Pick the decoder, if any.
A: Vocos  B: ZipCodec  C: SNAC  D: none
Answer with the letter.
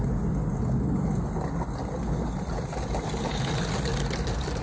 D